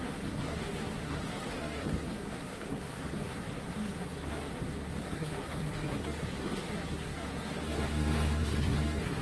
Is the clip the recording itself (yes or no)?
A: no